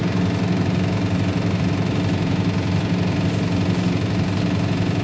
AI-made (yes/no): no